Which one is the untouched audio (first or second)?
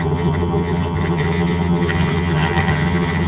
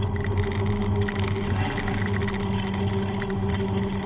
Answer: second